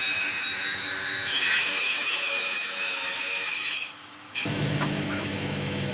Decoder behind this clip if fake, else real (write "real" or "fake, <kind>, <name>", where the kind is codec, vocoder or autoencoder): fake, autoencoder, DAC-VAE